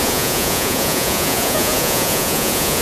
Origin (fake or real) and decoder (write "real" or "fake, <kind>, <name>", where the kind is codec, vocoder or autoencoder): fake, vocoder, Vocos